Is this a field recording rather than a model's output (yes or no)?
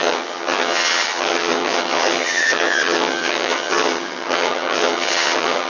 no